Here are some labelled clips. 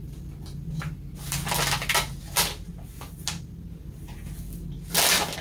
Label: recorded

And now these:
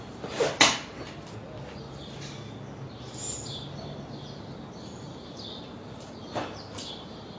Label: recorded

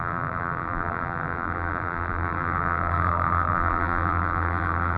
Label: remade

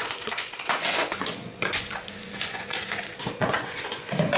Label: remade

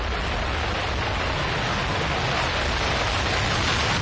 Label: recorded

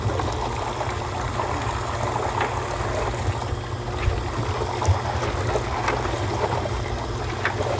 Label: recorded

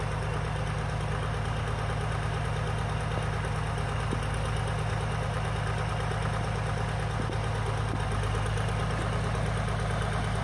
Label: recorded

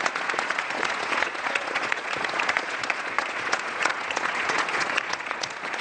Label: remade